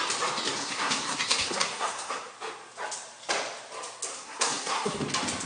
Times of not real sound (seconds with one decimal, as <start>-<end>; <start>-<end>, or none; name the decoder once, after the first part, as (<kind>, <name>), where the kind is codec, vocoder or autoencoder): 0.6-2.3 (codec, SNAC); 4.1-5.0